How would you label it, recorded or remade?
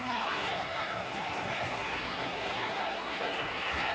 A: remade